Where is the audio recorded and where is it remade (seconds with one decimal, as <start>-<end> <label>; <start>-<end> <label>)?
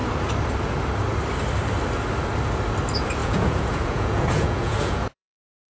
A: 0.0-3.2 recorded; 3.2-5.7 remade